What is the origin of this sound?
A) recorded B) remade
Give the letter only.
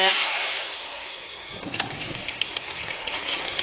B